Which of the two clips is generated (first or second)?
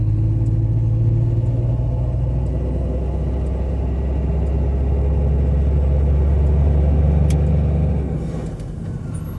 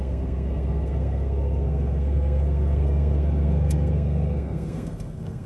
second